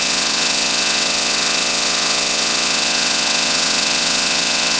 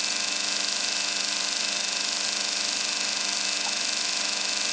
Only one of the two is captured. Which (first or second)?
second